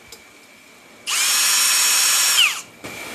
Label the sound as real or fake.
real